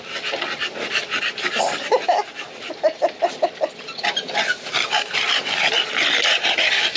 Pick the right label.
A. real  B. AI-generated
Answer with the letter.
B